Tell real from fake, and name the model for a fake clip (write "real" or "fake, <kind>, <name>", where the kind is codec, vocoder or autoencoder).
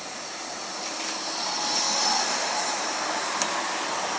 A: real